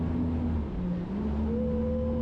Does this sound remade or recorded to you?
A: recorded